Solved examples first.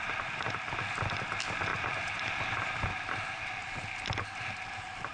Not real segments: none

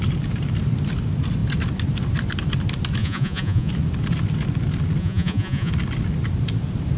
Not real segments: 3.0-3.7; 5.0-5.7